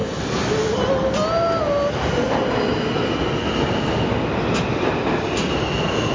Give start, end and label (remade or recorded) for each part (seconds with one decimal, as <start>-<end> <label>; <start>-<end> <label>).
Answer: 0.0-6.1 recorded